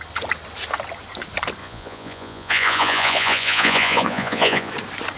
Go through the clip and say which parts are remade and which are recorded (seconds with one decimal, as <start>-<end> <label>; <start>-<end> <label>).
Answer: 0.0-1.6 recorded; 1.6-4.7 remade; 4.7-5.2 recorded